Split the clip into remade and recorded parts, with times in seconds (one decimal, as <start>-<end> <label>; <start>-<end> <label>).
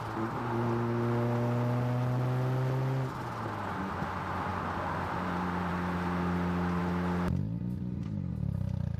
0.0-9.0 recorded